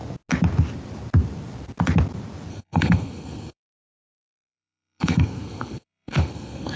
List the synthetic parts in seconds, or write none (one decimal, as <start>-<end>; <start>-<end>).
2.5-6.8